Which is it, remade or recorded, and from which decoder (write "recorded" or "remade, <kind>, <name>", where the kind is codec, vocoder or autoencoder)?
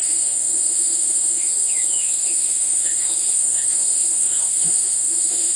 remade, autoencoder, DAC-VAE